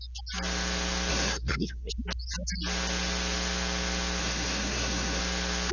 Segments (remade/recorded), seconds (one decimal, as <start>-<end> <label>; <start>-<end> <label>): 0.0-1.1 recorded; 1.1-1.9 remade; 1.9-4.2 recorded; 4.2-5.2 remade; 5.2-5.7 recorded